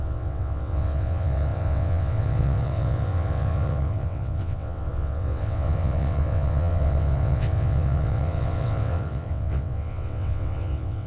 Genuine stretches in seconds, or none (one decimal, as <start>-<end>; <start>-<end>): none

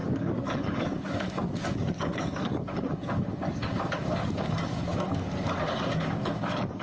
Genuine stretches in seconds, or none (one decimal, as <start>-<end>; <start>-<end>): none

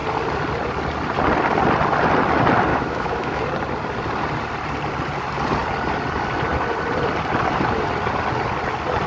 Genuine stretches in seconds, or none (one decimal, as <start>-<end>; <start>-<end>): 0.0-2.7; 3.4-9.1

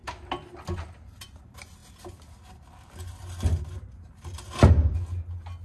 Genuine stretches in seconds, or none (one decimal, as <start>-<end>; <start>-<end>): 0.0-5.6

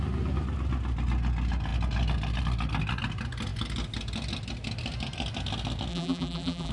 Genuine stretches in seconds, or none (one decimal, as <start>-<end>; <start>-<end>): 0.0-5.9

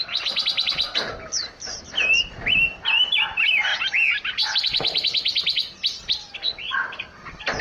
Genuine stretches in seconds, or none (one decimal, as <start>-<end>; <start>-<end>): 0.0-7.6

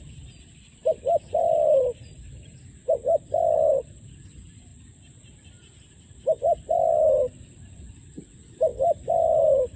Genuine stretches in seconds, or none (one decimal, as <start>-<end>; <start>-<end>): 0.0-0.8; 3.0-4.7; 6.4-8.7